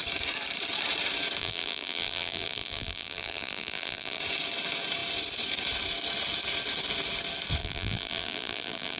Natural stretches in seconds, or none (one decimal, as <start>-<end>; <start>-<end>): 0.0-1.4; 4.2-7.6